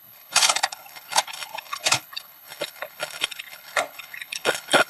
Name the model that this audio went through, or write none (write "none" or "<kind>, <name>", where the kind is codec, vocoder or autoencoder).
codec, HILCodec